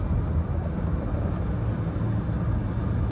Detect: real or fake real